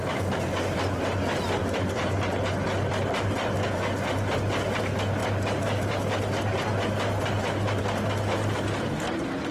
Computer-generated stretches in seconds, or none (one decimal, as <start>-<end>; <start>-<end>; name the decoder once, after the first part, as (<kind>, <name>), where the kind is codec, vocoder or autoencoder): none